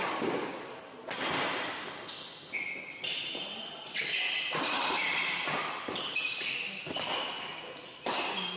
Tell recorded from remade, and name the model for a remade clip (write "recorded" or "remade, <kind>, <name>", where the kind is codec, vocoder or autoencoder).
recorded